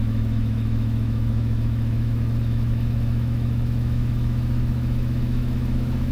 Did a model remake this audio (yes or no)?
yes